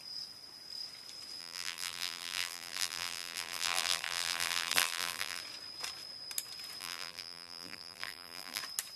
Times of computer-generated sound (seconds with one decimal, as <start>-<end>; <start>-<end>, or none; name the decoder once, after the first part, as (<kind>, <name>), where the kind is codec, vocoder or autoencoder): 1.4-5.4 (vocoder, BigVGAN v2); 6.8-8.6